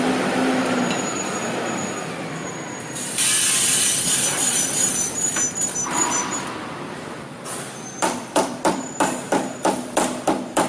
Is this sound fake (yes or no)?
yes